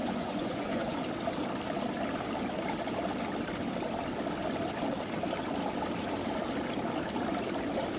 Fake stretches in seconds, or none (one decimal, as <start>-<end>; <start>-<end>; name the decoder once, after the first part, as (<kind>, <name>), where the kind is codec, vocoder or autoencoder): 0.0-1.0 (vocoder, Vocos)